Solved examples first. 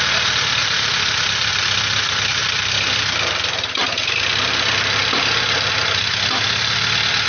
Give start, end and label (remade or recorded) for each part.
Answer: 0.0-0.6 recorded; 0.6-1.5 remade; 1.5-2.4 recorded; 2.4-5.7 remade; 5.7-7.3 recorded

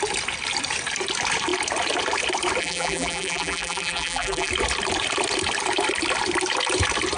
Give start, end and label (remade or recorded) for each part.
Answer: 0.0-2.6 recorded; 2.6-4.5 remade; 4.5-7.2 recorded

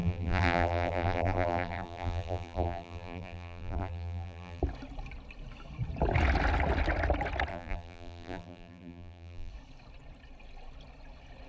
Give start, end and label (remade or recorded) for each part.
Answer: 0.0-4.6 remade; 4.6-7.5 recorded; 7.5-9.5 remade; 9.5-11.5 recorded

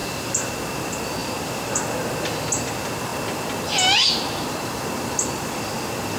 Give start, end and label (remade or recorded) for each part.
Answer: 0.0-0.5 remade; 0.5-1.2 recorded; 1.2-1.8 remade; 1.8-6.2 recorded

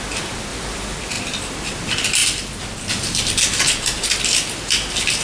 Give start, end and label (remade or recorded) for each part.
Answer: 0.0-0.5 recorded; 0.5-1.0 remade; 1.0-2.2 recorded; 2.2-2.9 remade; 2.9-5.2 recorded

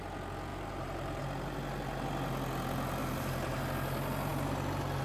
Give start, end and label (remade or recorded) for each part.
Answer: 0.0-0.5 recorded; 0.5-1.2 remade; 1.2-3.0 recorded; 3.0-3.6 remade; 3.6-5.0 recorded

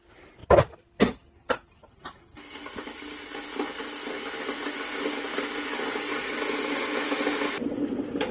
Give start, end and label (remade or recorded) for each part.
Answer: 0.0-0.4 recorded; 0.4-3.3 remade; 3.3-5.3 recorded; 5.3-6.3 remade; 6.3-8.3 recorded